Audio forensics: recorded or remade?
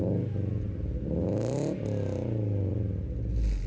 recorded